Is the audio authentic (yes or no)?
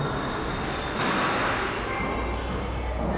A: yes